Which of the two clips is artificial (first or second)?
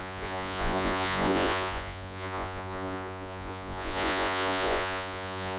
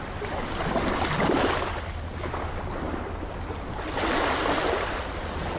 first